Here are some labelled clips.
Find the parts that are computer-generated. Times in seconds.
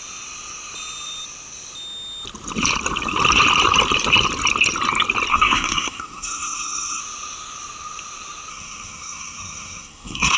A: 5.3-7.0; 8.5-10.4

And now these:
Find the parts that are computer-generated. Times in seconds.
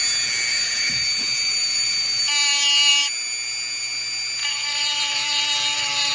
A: 0.5-2.2; 4.4-6.1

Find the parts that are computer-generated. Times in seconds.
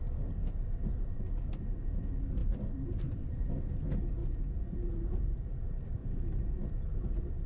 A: 0.4-1.2; 2.4-3.5; 4.2-5.6; 6.0-6.6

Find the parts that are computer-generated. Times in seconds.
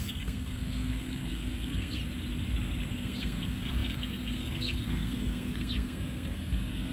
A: 0.0-2.0; 2.9-6.9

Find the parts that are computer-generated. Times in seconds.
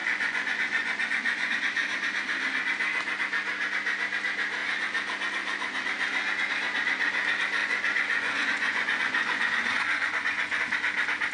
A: 0.0-1.5; 7.6-10.6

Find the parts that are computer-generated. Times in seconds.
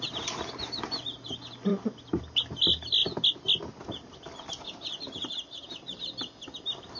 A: 1.7-2.2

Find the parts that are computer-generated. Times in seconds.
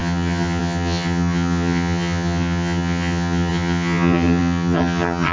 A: 0.0-5.3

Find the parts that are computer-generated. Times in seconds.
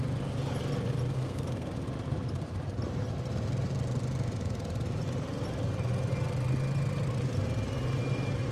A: 1.1-1.7